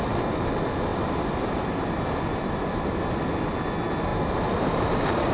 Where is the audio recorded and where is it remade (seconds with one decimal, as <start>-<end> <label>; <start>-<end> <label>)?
0.0-0.9 recorded; 0.9-3.0 remade; 3.0-4.1 recorded; 4.1-5.3 remade

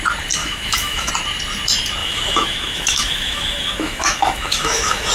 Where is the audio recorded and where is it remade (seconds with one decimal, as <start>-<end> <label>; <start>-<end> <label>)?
0.0-0.4 recorded; 0.4-1.1 remade; 1.1-2.0 recorded; 2.0-5.1 remade

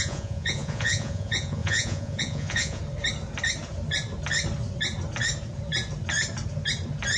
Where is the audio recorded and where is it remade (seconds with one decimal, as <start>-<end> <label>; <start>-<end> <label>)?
0.0-2.8 remade; 2.8-7.2 recorded